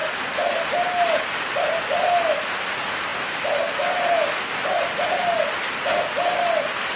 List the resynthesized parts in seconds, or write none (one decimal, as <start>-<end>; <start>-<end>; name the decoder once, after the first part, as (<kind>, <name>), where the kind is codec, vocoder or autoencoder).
none